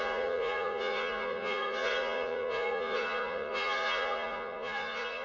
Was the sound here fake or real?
fake